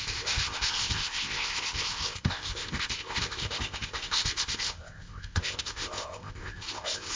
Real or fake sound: fake